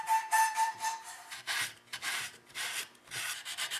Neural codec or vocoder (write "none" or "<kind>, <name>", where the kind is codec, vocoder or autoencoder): vocoder, BigVGAN v2